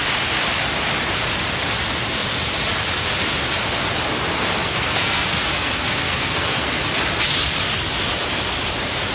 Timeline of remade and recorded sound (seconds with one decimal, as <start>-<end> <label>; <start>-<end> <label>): 0.0-4.6 recorded; 4.6-6.8 remade; 6.8-9.1 recorded